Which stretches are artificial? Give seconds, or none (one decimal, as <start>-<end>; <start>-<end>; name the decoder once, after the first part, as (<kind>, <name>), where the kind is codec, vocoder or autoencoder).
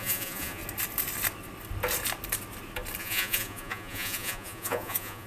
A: 0.0-0.6 (vocoder, Vocos); 3.0-5.3